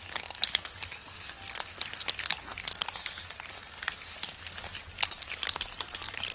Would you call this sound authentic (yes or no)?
yes